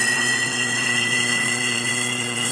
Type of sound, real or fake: fake